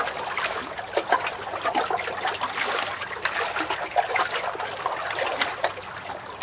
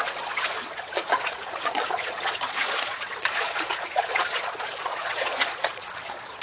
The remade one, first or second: second